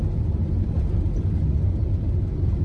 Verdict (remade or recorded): recorded